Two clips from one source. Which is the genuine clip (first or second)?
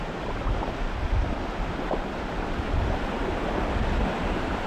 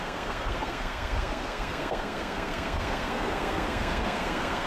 first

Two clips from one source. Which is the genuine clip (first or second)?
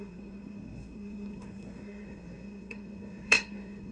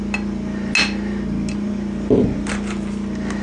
second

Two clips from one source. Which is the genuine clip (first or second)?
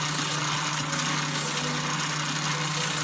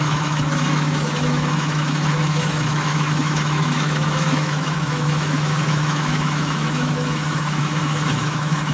first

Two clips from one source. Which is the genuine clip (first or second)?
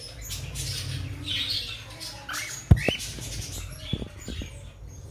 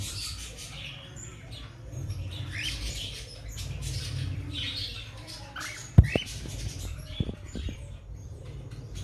first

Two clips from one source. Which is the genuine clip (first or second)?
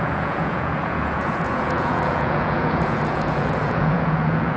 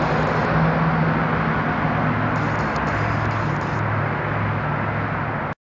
second